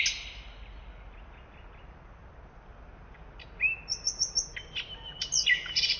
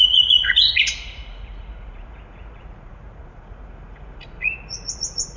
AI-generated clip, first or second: second